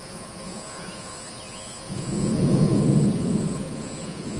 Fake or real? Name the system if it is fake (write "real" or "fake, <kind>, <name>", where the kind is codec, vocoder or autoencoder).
fake, vocoder, Vocos